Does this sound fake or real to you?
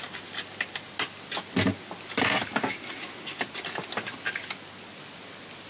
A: real